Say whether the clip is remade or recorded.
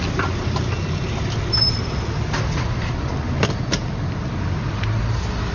recorded